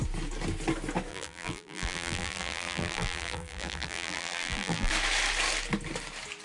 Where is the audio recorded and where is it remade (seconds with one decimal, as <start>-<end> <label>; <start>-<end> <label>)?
0.0-1.1 recorded; 1.1-4.9 remade; 4.9-6.4 recorded